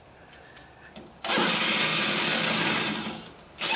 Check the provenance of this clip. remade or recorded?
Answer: recorded